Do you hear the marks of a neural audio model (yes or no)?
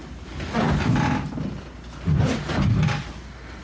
no